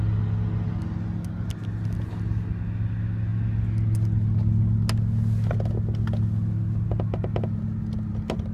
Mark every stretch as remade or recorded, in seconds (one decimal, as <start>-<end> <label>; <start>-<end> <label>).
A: 0.0-8.5 recorded